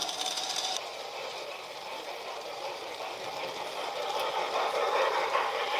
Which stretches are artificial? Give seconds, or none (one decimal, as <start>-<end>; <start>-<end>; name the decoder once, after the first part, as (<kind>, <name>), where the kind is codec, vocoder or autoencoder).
0.0-3.0 (vocoder, BigVGAN v2); 4.0-5.8